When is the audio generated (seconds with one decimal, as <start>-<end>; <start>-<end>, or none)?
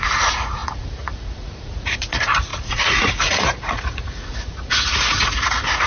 0.0-5.9